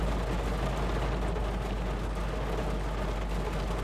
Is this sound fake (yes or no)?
no